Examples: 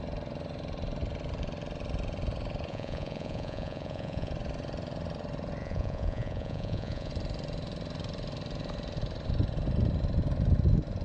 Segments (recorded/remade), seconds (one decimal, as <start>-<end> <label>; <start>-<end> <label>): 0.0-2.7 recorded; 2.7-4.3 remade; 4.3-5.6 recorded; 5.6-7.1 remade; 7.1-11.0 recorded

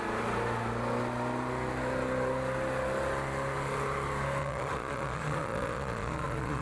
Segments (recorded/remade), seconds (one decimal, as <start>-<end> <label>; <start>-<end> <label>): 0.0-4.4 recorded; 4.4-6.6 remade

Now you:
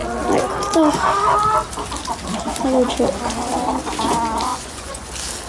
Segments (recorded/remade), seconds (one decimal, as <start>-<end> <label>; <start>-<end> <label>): 0.0-4.5 recorded; 4.5-5.1 remade; 5.1-5.5 recorded

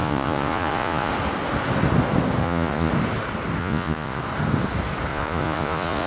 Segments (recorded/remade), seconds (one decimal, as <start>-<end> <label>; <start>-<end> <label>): 0.0-1.1 remade; 1.1-2.4 recorded; 2.4-2.9 remade; 2.9-3.6 recorded; 3.6-4.2 remade; 4.2-5.1 recorded; 5.1-6.1 remade